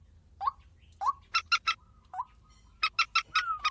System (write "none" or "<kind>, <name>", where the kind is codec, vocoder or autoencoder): none